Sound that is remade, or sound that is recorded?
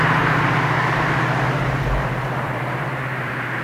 remade